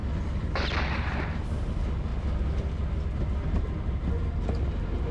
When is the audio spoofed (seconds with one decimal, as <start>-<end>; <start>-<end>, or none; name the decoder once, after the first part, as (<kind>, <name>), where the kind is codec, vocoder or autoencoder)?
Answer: none

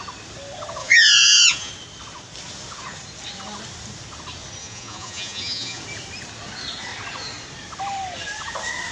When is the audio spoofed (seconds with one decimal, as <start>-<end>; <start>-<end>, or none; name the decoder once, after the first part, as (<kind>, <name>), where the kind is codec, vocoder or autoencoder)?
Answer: 0.8-1.7 (vocoder, Vocos); 4.6-5.8

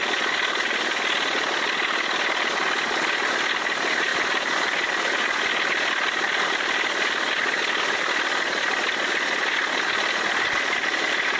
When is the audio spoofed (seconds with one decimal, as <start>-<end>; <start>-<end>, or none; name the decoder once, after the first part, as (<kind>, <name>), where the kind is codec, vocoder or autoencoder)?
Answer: none

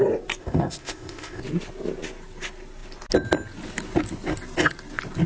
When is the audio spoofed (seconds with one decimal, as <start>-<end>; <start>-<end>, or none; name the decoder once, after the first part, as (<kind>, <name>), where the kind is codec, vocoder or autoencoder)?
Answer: 0.4-1.4 (codec, ZipCodec)

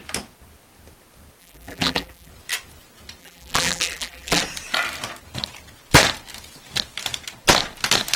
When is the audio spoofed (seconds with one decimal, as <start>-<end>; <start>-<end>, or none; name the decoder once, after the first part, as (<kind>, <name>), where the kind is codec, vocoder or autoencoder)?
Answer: 1.4-2.3 (vocoder, BigVGAN v2); 3.2-4.4

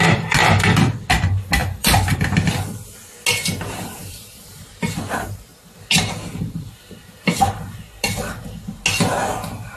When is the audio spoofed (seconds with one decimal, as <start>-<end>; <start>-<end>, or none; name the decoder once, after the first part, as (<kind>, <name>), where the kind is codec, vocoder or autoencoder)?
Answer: 1.6-2.2 (vocoder, BigVGAN v2); 3.4-4.7; 5.5-8.4

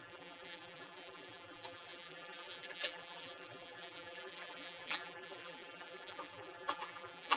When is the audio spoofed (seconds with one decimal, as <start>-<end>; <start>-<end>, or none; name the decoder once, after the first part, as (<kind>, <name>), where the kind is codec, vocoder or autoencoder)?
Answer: 0.0-7.4 (vocoder, BigVGAN v2)

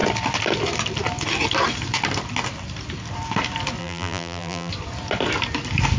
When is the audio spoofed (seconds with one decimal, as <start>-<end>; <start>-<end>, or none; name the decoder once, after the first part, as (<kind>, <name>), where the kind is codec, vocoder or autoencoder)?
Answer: 3.8-4.7 (vocoder, BigVGAN v2)